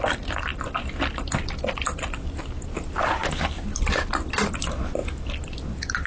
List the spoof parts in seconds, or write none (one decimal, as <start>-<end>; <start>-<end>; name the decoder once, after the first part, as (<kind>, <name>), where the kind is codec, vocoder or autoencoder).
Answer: none